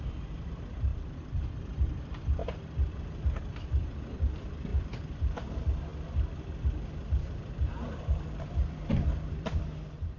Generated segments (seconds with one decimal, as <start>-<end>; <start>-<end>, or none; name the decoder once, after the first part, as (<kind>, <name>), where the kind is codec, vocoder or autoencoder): 0.0-2.4 (vocoder, BigVGAN v2); 2.9-5.9; 7.1-10.2